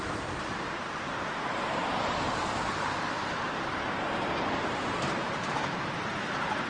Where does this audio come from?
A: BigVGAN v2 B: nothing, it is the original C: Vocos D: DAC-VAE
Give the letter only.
A